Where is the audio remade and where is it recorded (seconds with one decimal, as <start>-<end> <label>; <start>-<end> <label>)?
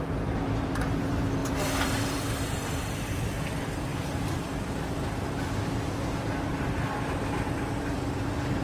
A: 0.0-1.4 recorded; 1.4-3.2 remade; 3.2-3.9 recorded; 3.9-5.4 remade; 5.4-8.6 recorded